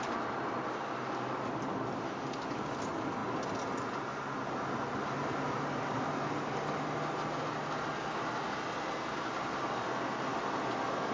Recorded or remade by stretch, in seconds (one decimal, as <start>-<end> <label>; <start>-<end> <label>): 0.0-11.1 recorded